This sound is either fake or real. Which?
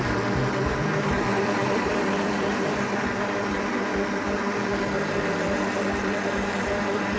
real